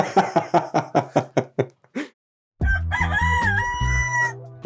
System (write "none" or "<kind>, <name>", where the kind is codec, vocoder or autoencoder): none